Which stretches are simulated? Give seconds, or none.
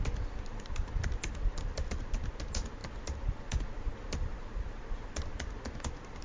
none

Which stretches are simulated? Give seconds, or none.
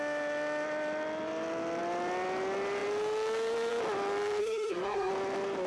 4.4-5.1 (codec, SNAC)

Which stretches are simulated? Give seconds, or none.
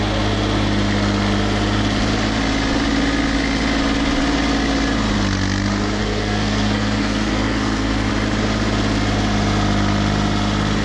6.0-8.1 (codec, SNAC)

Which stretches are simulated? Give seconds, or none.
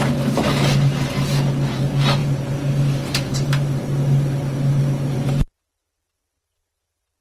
none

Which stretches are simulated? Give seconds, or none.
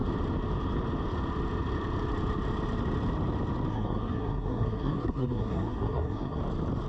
3.7-6.4 (codec, SNAC)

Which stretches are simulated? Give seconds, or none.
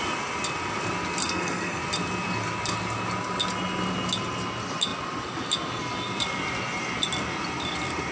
1.2-1.8 (codec, SNAC)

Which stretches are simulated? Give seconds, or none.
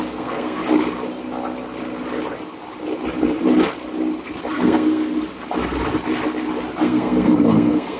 0.0-0.6 (codec, SNAC); 4.5-5.1; 6.8-8.0